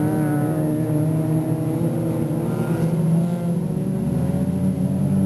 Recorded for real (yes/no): yes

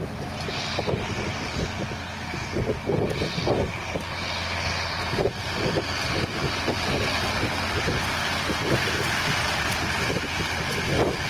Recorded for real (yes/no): yes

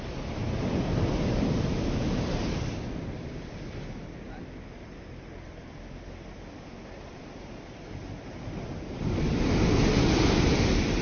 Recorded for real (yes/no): yes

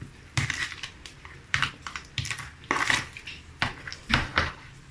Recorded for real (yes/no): no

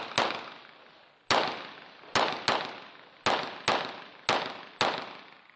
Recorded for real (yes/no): yes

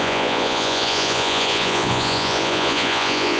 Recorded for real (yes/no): no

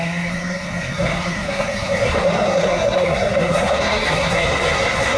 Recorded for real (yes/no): no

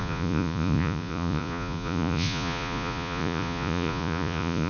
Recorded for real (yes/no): no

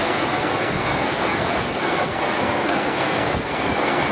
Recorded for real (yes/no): no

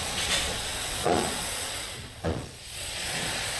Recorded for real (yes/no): no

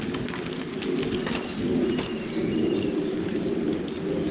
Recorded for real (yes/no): yes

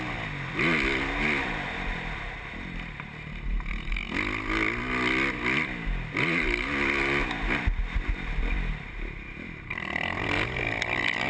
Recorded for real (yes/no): yes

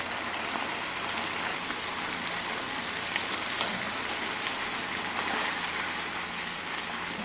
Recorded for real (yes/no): yes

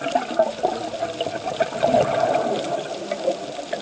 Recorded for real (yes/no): yes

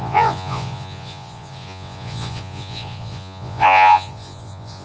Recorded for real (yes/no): no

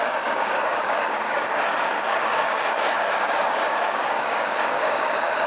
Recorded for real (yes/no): no